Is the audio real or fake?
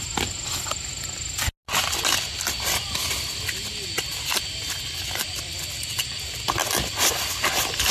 real